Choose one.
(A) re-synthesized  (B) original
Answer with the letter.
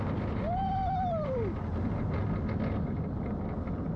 B